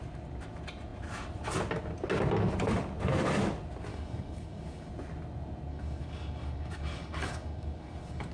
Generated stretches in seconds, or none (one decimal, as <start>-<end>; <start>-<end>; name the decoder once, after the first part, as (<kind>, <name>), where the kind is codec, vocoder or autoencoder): 3.9-4.9 (codec, DAC); 5.7-8.3